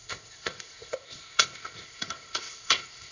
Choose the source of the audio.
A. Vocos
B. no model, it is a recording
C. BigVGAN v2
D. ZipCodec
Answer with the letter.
D